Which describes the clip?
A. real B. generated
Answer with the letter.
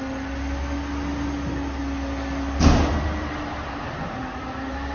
A